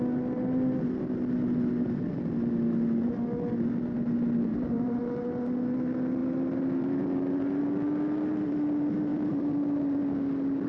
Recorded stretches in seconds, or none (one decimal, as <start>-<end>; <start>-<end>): 0.0-4.5; 5.0-6.2; 7.6-9.1; 10.0-10.7